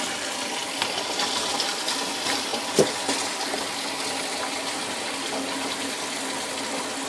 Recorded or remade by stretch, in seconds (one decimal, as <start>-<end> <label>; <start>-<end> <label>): 0.0-7.1 recorded